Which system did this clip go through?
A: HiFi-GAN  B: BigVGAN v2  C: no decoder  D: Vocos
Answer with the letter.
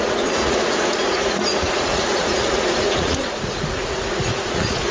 D